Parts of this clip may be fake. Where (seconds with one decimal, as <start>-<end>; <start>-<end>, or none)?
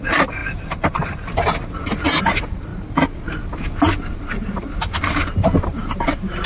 0.0-2.7; 3.6-6.5